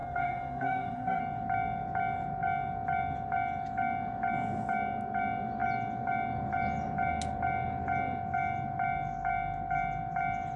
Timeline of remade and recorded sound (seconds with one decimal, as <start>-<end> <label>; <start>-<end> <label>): 0.0-1.2 remade; 1.2-10.6 recorded